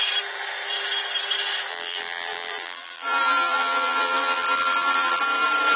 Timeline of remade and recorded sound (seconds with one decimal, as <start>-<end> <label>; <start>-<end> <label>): 0.0-1.7 recorded; 1.7-5.2 remade; 5.2-5.8 recorded